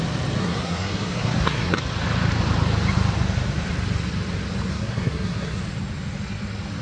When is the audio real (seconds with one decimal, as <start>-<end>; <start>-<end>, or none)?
0.0-0.4; 1.8-4.7; 5.6-6.8